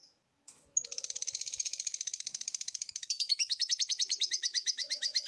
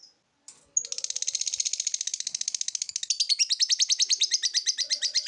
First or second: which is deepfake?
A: first